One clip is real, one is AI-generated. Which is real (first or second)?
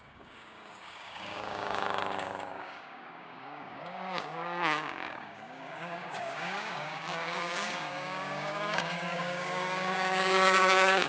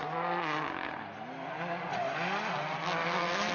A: second